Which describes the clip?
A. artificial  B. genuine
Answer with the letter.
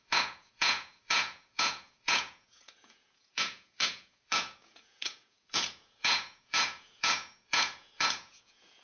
A